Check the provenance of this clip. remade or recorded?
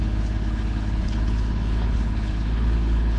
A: remade